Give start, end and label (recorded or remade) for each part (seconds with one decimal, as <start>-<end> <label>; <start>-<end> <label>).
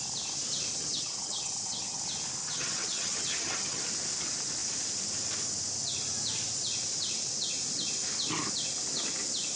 0.0-0.7 recorded; 0.7-2.0 remade; 2.0-2.4 recorded; 2.4-3.8 remade; 3.8-9.6 recorded